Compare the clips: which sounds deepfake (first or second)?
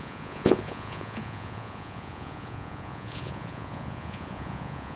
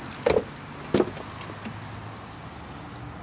first